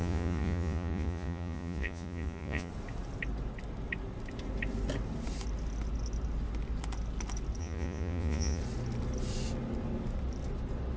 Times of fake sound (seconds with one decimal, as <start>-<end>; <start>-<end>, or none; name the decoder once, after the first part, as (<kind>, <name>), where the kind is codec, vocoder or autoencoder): 0.0-2.7 (vocoder, Vocos); 7.6-8.6